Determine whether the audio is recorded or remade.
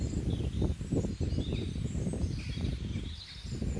recorded